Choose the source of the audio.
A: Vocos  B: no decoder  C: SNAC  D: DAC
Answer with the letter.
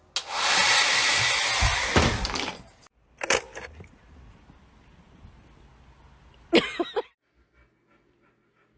B